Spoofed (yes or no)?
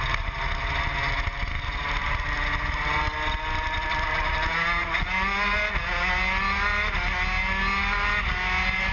no